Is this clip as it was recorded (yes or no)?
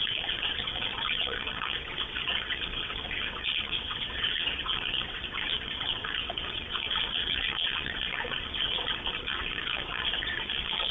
no